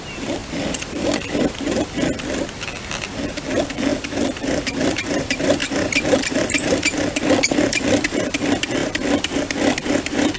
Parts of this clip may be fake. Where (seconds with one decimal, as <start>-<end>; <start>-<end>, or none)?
0.4-1.4; 3.9-7.2; 8.8-9.4